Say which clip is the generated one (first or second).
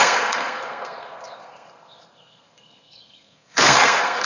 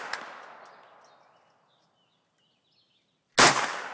first